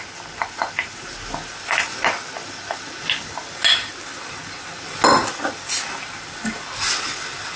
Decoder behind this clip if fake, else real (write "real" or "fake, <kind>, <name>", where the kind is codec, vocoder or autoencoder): real